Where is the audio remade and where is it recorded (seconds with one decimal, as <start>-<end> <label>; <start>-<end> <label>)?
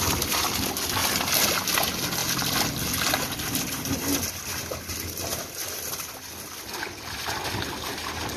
0.0-2.2 recorded; 2.2-4.3 remade; 4.3-8.4 recorded